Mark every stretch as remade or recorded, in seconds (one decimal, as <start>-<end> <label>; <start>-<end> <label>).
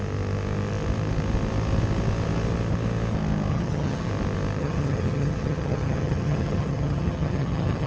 0.0-3.5 recorded; 3.5-4.1 remade; 4.1-4.6 recorded; 4.6-7.9 remade